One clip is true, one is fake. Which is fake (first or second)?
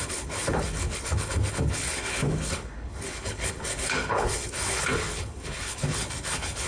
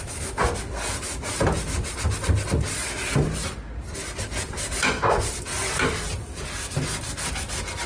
first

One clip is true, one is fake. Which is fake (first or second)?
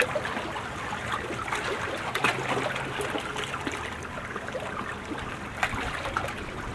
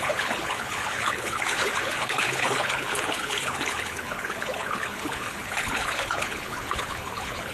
second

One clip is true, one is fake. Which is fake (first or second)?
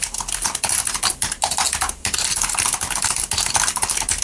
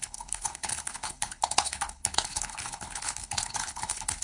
second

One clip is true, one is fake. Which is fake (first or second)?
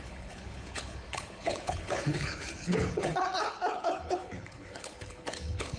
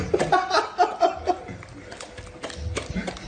first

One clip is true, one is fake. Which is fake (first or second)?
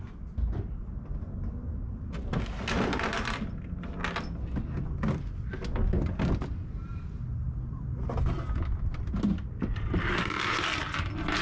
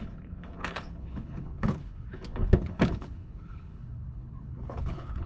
second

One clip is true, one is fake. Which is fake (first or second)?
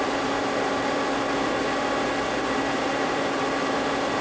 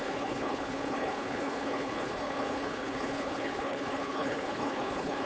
second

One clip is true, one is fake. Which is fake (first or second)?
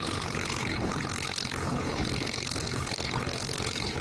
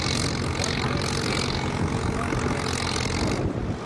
first